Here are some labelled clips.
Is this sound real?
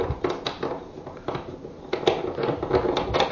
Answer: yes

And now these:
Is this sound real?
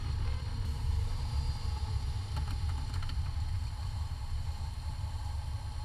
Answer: yes